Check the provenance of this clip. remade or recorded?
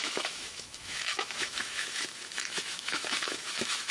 remade